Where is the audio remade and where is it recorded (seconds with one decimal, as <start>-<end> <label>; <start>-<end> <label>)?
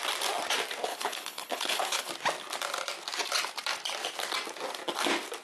0.0-0.9 recorded; 0.9-2.1 remade; 2.1-5.4 recorded